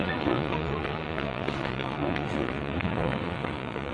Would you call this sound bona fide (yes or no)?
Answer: no